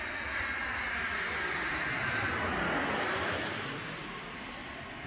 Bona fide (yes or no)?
yes